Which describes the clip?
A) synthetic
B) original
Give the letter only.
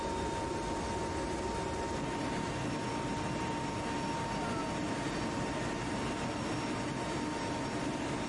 B